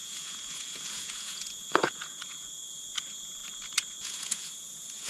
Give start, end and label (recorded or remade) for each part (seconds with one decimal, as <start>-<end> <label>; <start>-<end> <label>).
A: 0.0-5.1 remade